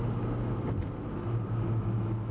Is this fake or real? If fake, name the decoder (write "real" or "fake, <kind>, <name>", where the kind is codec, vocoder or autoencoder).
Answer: real